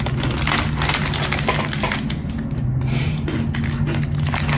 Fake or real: real